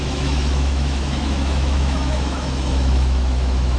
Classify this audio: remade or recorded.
remade